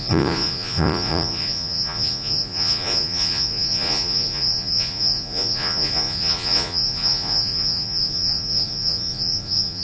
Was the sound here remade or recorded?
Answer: remade